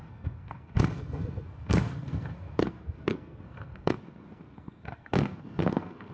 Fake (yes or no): yes